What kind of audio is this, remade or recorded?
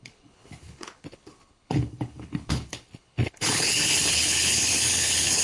remade